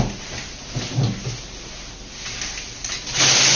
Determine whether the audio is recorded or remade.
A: recorded